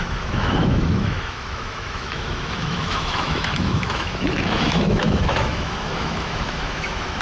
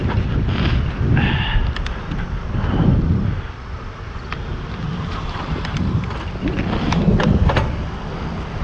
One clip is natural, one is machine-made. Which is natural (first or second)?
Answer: second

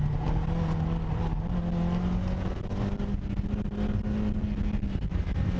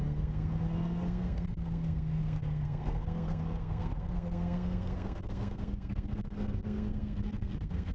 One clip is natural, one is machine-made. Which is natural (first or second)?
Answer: first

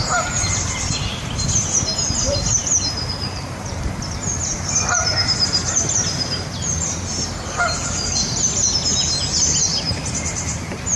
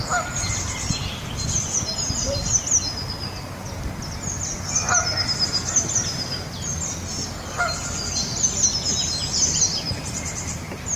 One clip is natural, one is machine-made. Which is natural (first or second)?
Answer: second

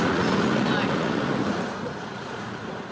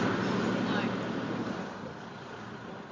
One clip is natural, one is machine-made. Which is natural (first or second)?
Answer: second